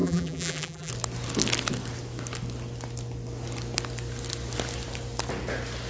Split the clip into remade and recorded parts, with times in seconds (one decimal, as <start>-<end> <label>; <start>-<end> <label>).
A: 0.0-0.9 remade; 0.9-5.9 recorded